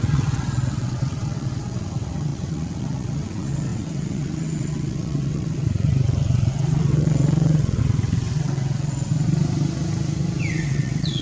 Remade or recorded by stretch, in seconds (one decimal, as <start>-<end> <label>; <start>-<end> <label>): 0.0-9.1 remade; 9.1-10.5 recorded; 10.5-11.2 remade